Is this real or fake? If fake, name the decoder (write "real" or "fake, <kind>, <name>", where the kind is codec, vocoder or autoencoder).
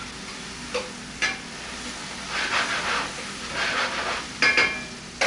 real